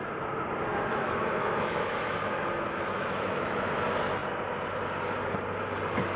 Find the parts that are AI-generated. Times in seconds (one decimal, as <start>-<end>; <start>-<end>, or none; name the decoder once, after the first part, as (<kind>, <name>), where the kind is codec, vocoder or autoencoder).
0.7-3.7 (autoencoder, DAC-VAE)